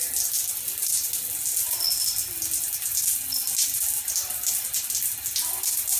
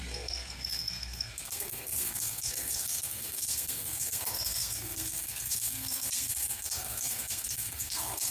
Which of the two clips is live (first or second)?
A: first